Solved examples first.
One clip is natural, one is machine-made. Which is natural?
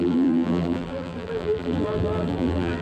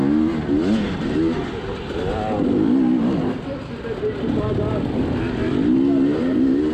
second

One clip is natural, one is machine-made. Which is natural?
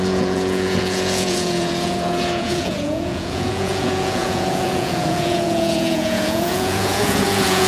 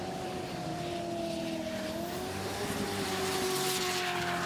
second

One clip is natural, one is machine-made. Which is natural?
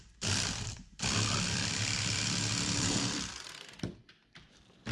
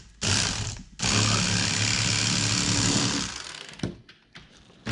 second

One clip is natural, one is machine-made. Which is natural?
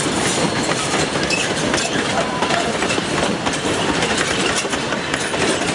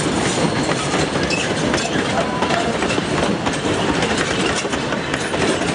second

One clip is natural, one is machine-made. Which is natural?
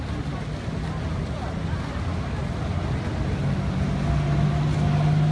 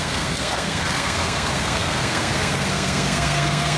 first